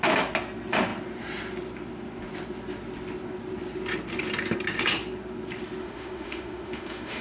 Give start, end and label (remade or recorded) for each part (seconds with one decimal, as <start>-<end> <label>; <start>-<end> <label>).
0.0-5.8 recorded; 5.8-7.2 remade